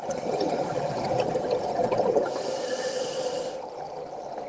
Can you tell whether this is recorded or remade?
remade